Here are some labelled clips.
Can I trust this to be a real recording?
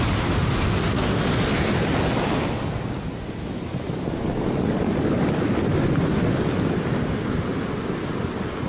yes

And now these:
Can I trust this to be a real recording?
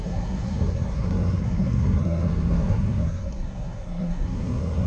no